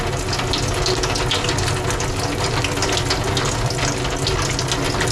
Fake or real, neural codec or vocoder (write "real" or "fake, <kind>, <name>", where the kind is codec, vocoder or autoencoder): real